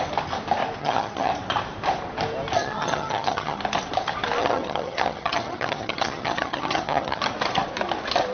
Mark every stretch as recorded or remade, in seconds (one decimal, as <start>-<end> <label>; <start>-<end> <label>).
0.0-0.8 recorded; 0.8-1.3 remade; 1.3-2.6 recorded; 2.6-3.6 remade; 3.6-4.4 recorded; 4.4-7.2 remade; 7.2-8.3 recorded